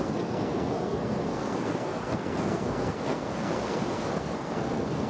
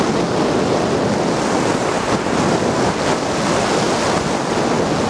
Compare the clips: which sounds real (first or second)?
second